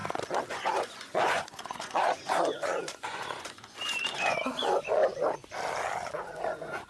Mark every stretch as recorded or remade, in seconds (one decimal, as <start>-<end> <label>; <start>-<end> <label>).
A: 0.0-0.5 recorded; 0.5-5.0 remade; 5.0-6.1 recorded; 6.1-6.9 remade